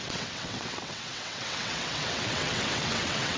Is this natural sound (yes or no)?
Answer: no